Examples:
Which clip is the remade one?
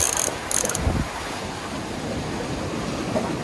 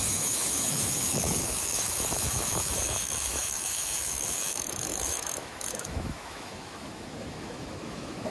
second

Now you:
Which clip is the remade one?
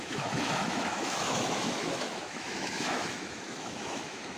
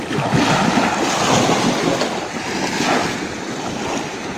first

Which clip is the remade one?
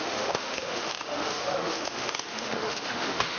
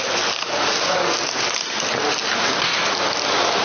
first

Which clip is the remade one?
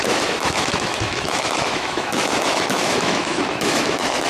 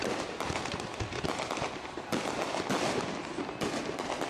first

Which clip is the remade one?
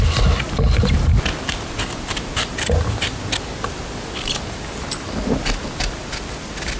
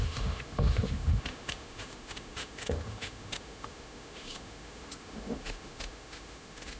second